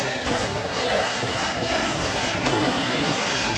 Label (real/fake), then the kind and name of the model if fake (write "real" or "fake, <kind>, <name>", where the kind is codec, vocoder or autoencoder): fake, codec, SNAC